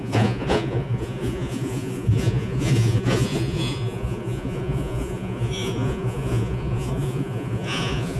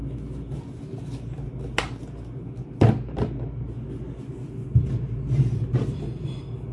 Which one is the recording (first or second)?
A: second